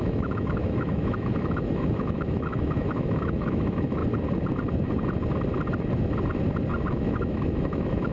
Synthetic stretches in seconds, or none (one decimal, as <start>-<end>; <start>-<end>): 0.0-4.0; 6.9-8.1